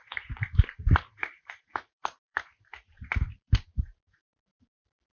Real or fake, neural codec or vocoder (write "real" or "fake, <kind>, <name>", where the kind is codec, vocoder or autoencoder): fake, vocoder, BigVGAN v2